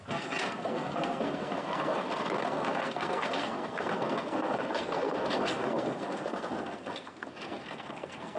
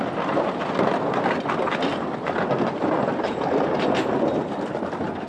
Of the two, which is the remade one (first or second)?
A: first